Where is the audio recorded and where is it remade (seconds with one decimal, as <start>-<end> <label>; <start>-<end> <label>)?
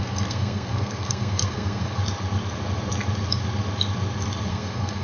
0.0-2.0 remade; 2.0-4.5 recorded; 4.5-5.0 remade